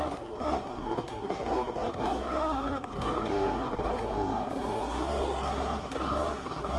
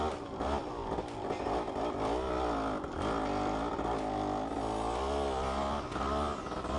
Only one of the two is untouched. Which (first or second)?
second